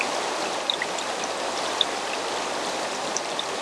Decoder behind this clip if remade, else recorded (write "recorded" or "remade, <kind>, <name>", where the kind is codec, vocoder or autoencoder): recorded